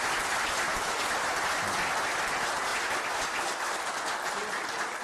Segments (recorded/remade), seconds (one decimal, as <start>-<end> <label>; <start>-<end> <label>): 0.0-5.0 recorded